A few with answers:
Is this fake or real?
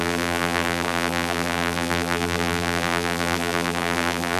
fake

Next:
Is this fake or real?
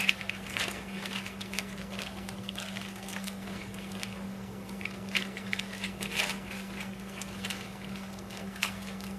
fake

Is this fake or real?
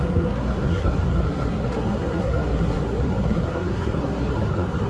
fake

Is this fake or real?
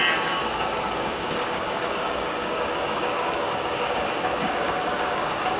fake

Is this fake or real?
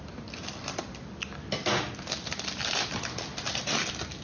real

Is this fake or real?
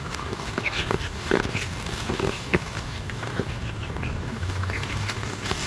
fake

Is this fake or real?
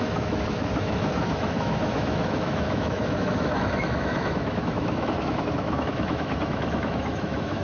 fake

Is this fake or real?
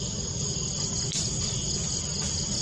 real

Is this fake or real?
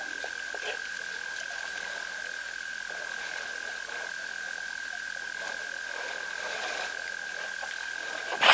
fake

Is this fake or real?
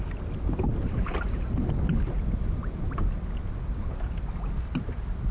real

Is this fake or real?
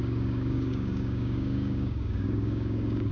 fake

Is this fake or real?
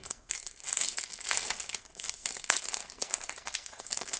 fake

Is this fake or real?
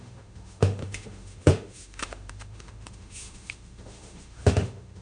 fake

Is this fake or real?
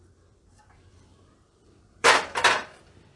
fake